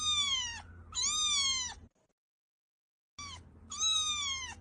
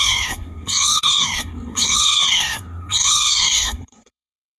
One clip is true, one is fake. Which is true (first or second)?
first